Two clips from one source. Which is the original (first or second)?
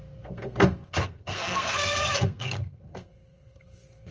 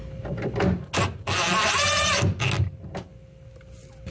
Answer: second